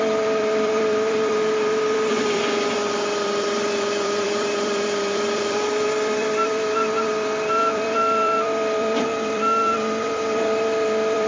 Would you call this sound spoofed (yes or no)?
yes